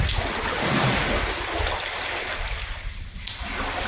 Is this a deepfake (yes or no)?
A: no